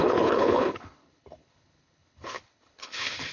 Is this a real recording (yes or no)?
no